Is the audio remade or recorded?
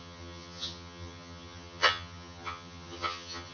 remade